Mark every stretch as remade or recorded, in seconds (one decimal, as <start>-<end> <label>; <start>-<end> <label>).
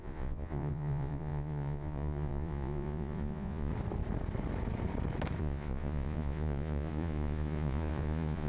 0.0-3.7 remade; 3.7-5.4 recorded; 5.4-8.5 remade